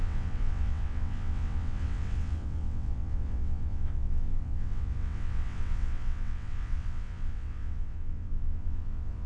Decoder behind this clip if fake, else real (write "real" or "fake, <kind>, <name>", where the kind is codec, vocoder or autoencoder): fake, vocoder, WaveNeXt